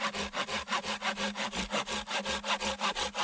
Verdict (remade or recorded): recorded